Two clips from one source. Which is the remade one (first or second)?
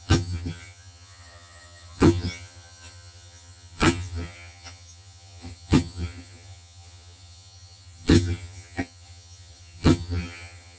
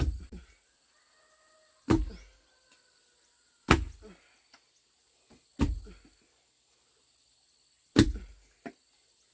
first